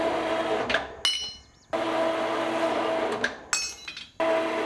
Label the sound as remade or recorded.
recorded